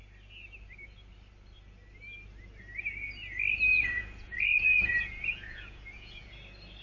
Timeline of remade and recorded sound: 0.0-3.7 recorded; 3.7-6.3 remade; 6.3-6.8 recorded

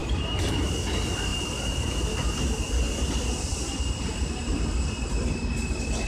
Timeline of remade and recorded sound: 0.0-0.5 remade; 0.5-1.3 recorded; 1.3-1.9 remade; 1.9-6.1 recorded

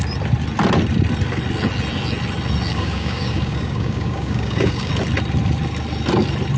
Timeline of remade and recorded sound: 0.0-2.7 recorded; 2.7-4.9 remade; 4.9-6.6 recorded

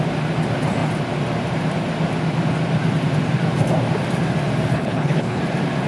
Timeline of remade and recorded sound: 0.0-4.7 recorded; 4.7-5.4 remade; 5.4-5.9 recorded

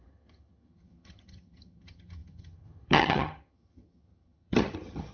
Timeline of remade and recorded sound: 0.0-5.1 remade

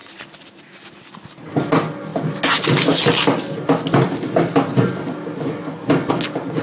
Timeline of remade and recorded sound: 0.0-1.7 remade; 1.7-6.6 recorded

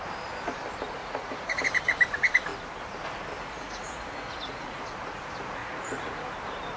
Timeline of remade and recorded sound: 0.0-1.0 recorded; 1.0-1.6 remade; 1.6-3.4 recorded; 3.4-4.8 remade; 4.8-5.6 recorded; 5.6-6.3 remade; 6.3-6.8 recorded

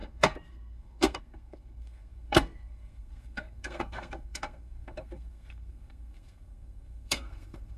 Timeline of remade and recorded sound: 0.0-7.8 remade